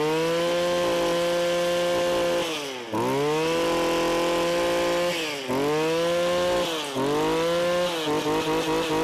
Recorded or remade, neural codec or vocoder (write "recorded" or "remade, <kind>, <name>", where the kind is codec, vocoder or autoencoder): recorded